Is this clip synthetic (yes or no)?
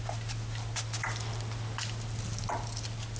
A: no